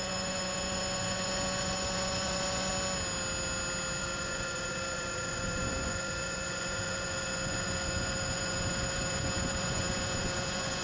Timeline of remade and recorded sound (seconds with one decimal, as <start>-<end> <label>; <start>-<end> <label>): 0.0-2.7 remade; 2.7-4.0 recorded; 4.0-10.8 remade